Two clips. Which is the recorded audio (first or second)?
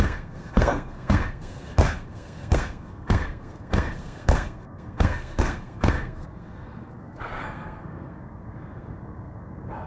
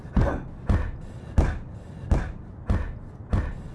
second